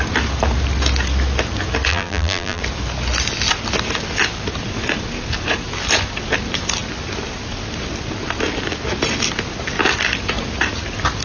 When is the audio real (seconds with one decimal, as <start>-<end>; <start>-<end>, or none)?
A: 0.0-1.9; 2.6-11.2